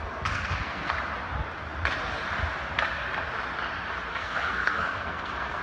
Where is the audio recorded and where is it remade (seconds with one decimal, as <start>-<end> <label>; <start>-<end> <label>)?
0.0-0.9 remade; 0.9-4.1 recorded; 4.1-5.6 remade